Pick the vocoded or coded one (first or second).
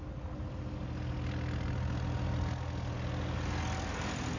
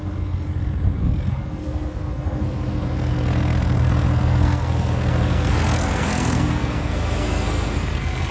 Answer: second